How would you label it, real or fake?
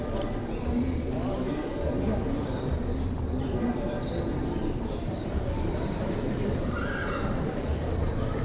fake